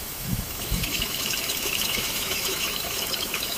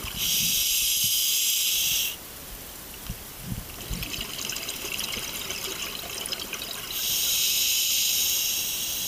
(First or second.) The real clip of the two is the second